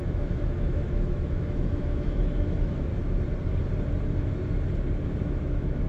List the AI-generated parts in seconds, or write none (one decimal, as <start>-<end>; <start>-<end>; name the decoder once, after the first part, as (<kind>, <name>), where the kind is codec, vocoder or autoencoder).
0.0-2.9 (autoencoder, DAC-VAE); 5.2-5.9